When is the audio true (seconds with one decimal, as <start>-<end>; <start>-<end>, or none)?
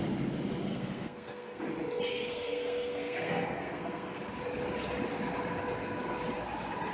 0.0-0.7; 1.6-2.1; 4.2-6.9